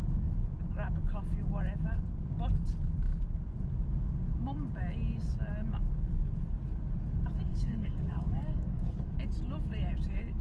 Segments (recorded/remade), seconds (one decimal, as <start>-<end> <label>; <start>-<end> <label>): 0.0-7.5 recorded; 7.5-9.1 remade; 9.1-10.4 recorded